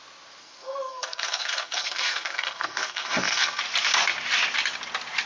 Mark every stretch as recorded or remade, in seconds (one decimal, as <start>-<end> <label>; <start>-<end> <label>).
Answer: 0.0-0.4 recorded; 0.4-3.6 remade; 3.6-5.3 recorded